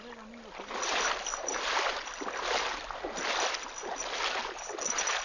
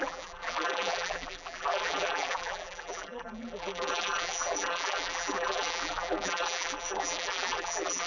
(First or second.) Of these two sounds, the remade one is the second